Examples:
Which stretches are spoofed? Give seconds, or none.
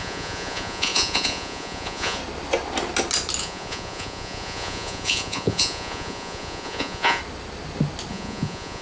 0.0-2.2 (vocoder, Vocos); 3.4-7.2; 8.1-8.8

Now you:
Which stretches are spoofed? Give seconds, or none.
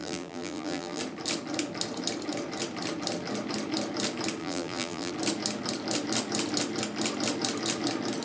0.0-1.0 (vocoder, BigVGAN v2); 4.4-5.1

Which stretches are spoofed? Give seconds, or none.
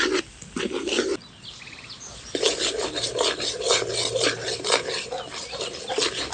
none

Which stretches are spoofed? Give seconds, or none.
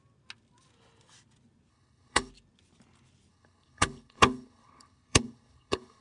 1.7-2.3 (codec, HILCodec); 3.3-6.0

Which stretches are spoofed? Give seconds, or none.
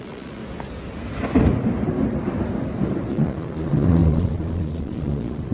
0.0-0.4 (vocoder, Vocos); 3.1-5.5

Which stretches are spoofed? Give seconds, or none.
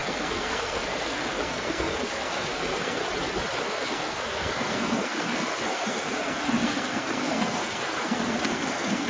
0.0-3.0 (codec, SNAC); 3.6-9.1